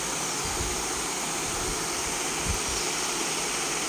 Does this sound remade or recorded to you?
recorded